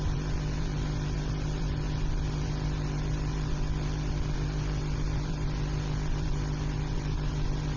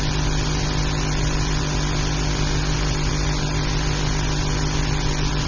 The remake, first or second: first